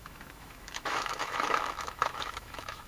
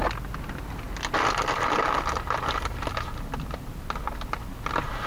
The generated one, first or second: first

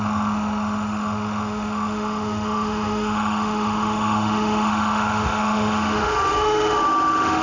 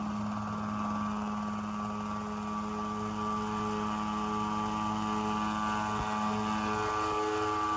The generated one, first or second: first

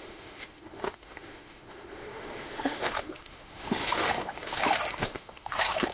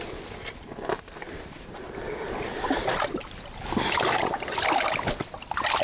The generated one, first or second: first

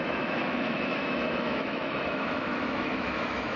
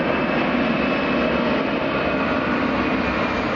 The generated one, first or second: first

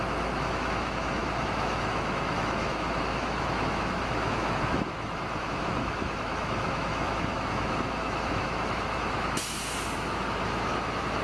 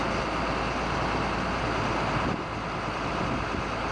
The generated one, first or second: first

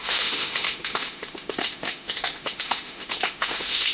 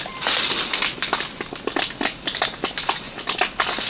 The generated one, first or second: first